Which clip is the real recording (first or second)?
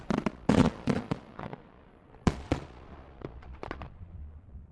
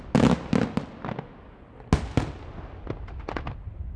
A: second